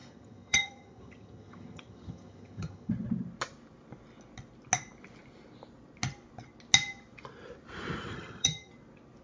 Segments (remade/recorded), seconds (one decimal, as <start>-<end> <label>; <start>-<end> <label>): 0.0-2.9 remade; 2.9-8.1 recorded; 8.1-8.7 remade; 8.7-9.2 recorded